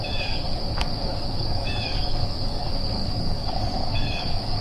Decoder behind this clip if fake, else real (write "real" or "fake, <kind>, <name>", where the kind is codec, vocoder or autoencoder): fake, codec, DAC